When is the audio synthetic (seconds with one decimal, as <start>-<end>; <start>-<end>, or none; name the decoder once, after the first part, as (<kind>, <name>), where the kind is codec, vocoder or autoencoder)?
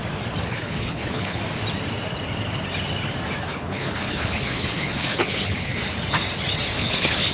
0.5-1.4 (codec, HILCodec); 3.4-5.8; 6.7-7.3